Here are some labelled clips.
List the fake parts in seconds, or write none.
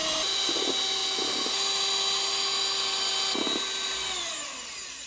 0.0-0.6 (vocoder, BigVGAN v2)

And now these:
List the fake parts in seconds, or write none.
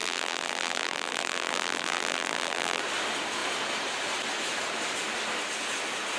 0.0-2.8 (vocoder, BigVGAN v2)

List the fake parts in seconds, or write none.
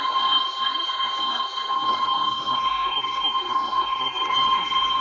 0.0-5.0 (codec, SNAC)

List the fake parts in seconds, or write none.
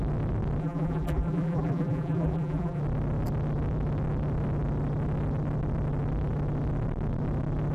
0.6-2.8 (vocoder, BigVGAN v2)